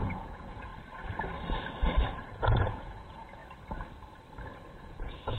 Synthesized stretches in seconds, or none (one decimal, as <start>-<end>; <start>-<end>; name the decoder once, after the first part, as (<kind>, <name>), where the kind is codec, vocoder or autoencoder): 0.0-0.7 (vocoder, Vocos); 2.4-3.4; 4.7-5.4

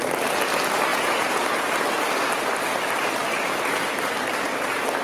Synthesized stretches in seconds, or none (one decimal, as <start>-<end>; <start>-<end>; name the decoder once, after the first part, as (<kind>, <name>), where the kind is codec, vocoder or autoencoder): 0.9-1.4 (vocoder, Vocos)

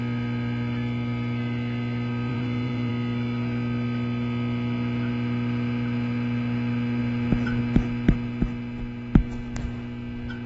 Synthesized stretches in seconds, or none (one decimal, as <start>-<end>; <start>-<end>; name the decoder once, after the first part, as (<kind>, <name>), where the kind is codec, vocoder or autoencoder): 2.3-2.9 (vocoder, Vocos)

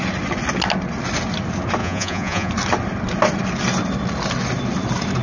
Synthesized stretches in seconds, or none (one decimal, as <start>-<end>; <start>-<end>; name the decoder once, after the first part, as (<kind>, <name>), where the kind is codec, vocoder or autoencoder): 1.8-2.5 (vocoder, Vocos)

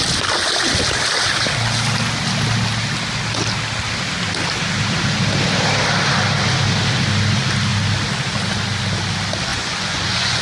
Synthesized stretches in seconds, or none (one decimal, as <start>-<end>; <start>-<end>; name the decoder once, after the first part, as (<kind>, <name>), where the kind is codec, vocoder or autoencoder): 9.5-10.4 (vocoder, Vocos)